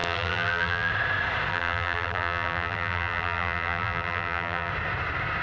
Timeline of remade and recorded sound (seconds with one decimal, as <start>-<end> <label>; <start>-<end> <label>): 0.0-0.9 remade; 0.9-1.5 recorded; 1.5-4.7 remade; 4.7-5.4 recorded